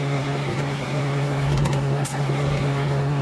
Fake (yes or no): yes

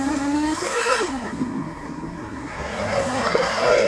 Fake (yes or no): yes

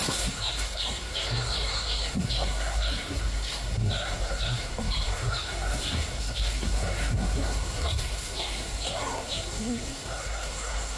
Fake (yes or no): yes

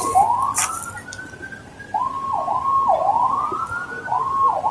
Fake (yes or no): no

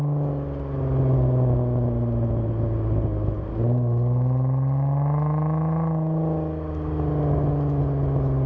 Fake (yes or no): no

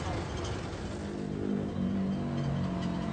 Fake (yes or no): no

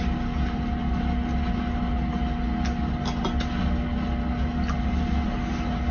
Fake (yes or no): no